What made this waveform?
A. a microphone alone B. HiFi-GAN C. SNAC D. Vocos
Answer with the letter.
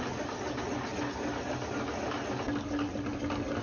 A